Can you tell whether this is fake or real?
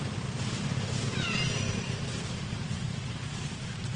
fake